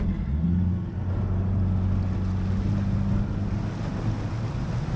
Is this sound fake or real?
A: real